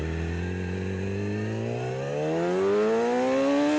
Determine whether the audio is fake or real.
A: real